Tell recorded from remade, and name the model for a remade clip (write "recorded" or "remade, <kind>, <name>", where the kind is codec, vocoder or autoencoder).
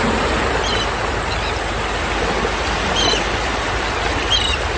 recorded